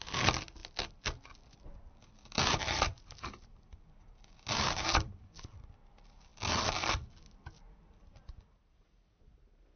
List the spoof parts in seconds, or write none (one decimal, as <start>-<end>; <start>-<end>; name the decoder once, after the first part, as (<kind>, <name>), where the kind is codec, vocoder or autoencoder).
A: none